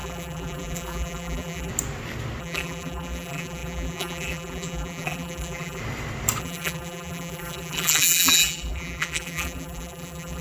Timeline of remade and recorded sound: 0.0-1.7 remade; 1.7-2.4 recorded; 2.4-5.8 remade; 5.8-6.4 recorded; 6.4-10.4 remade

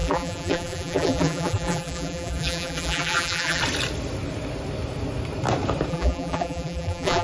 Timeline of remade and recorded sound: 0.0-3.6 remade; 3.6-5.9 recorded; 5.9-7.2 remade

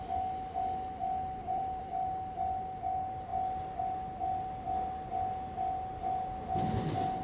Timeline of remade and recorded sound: 0.0-1.4 recorded; 1.4-1.9 remade; 1.9-7.2 recorded

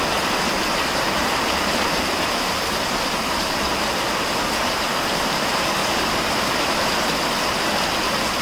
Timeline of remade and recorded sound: 0.0-1.2 recorded; 1.2-5.2 remade; 5.2-5.8 recorded; 5.8-7.2 remade; 7.2-8.4 recorded

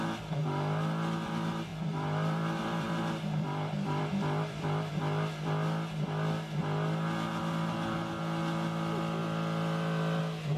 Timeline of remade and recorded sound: 0.0-1.7 recorded; 1.7-4.9 remade; 4.9-9.2 recorded; 9.2-10.2 remade; 10.2-10.6 recorded